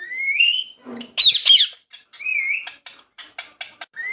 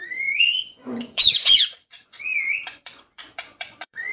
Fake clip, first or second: second